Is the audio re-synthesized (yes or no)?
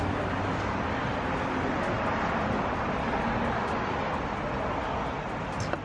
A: no